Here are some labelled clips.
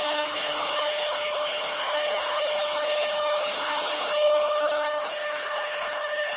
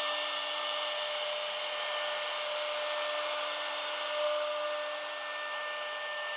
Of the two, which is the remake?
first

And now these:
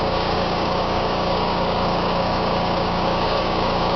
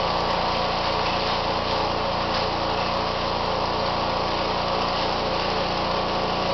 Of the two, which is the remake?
first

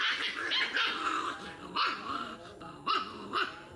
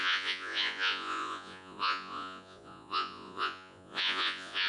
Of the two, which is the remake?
second